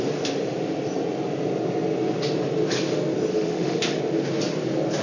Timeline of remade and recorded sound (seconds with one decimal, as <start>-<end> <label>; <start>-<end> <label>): 0.0-3.3 recorded; 3.3-4.0 remade; 4.0-5.0 recorded